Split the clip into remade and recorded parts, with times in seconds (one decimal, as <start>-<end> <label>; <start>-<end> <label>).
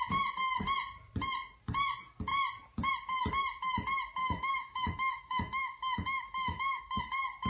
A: 0.0-4.2 recorded; 4.2-7.0 remade; 7.0-7.5 recorded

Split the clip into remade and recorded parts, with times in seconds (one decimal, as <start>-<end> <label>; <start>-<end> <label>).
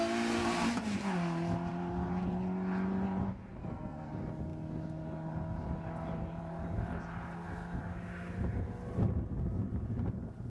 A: 0.0-3.6 recorded; 3.6-4.1 remade; 4.1-10.5 recorded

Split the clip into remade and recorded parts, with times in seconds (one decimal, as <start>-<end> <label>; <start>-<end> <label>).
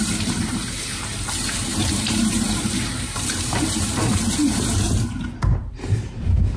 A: 0.0-6.6 remade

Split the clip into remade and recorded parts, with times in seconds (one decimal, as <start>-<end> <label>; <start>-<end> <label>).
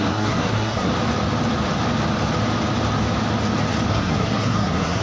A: 0.0-0.9 remade; 0.9-3.9 recorded; 3.9-5.0 remade